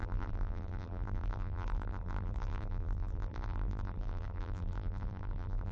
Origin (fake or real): fake